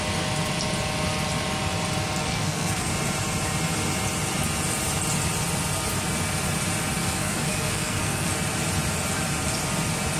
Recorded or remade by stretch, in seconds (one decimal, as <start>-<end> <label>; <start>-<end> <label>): 0.0-2.2 recorded; 2.2-2.9 remade; 2.9-7.0 recorded; 7.0-8.3 remade; 8.3-10.2 recorded